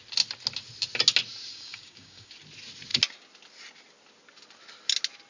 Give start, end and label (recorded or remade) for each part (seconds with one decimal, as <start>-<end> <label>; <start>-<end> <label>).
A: 0.0-1.5 recorded; 1.5-2.3 remade; 2.3-5.3 recorded